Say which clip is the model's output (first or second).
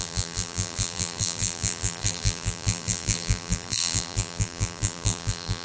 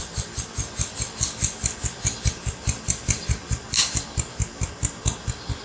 first